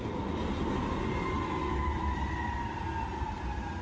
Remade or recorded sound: recorded